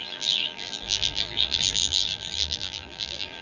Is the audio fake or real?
fake